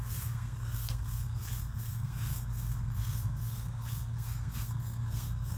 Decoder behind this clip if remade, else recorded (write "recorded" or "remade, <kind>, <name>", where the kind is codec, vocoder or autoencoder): remade, codec, SNAC